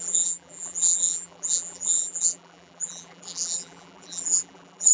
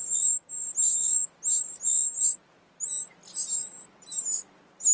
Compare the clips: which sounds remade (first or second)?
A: first